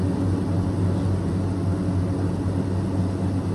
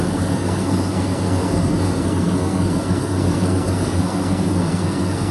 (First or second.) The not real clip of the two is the second